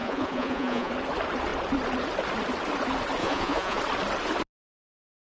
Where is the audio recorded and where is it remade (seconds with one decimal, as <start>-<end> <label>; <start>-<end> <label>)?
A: 0.0-0.9 remade; 0.9-3.2 recorded; 3.2-3.8 remade; 3.8-5.4 recorded